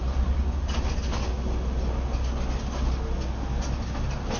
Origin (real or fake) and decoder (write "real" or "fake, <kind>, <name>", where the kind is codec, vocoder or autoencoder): real